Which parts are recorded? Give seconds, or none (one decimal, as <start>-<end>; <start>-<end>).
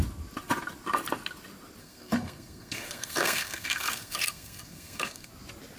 0.0-1.8; 5.3-5.8